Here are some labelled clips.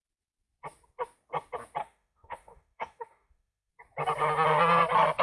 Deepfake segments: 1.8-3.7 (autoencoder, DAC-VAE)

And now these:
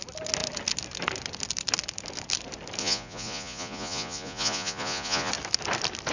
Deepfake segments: 2.8-5.3 (vocoder, Vocos)